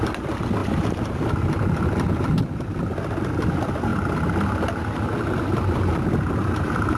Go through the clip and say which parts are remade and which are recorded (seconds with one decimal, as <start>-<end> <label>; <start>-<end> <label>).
0.0-7.0 recorded